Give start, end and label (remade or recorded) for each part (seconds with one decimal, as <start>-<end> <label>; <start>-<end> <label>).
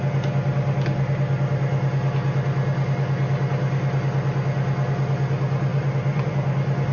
0.0-5.7 recorded; 5.7-6.3 remade; 6.3-6.9 recorded